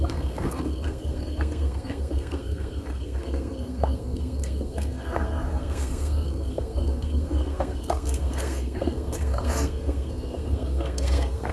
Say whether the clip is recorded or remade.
remade